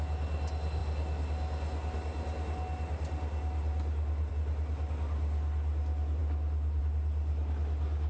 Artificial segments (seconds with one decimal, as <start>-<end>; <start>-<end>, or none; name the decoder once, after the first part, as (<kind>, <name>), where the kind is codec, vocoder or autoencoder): none